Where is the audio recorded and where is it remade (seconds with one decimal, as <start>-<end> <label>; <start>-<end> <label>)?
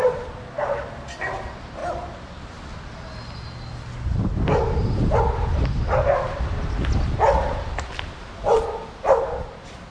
0.0-9.9 recorded